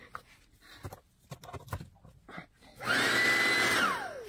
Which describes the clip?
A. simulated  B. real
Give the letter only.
B